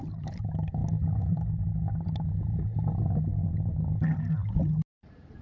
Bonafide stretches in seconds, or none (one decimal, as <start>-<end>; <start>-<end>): 0.0-5.4